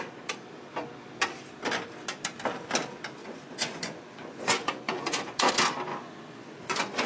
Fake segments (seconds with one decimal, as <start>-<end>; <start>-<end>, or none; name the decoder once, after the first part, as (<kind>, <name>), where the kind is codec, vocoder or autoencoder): 3.2-5.5 (vocoder, Vocos); 5.9-7.1